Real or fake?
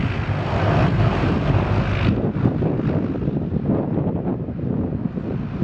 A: real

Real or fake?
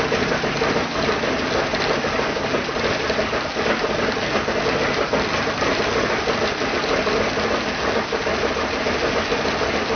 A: real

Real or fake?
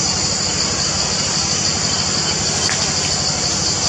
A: real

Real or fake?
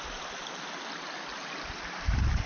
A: real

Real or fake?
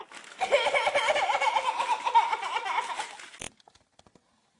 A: fake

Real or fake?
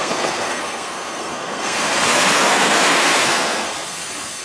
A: fake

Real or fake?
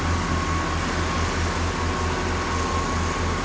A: real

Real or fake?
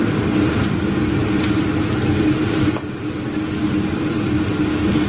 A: real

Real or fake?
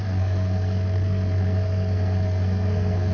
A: fake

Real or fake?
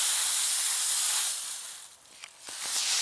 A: real